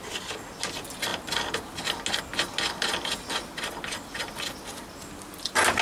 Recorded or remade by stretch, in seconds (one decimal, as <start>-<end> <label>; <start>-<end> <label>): 0.0-5.8 recorded